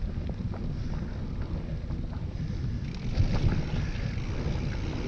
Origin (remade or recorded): recorded